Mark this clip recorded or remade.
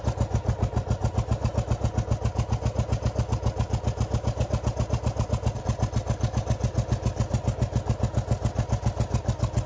recorded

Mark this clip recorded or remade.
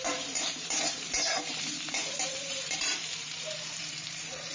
remade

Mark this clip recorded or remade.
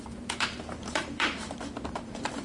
remade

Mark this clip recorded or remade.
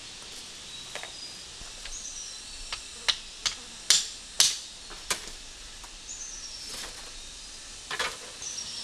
recorded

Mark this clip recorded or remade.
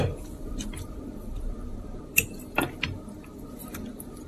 remade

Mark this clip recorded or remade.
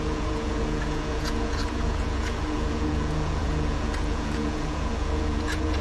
remade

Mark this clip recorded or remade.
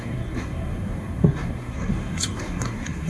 remade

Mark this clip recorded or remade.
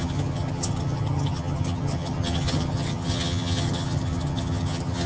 remade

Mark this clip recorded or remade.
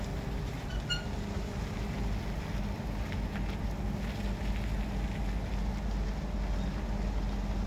recorded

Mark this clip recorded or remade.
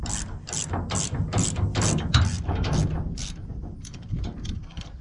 recorded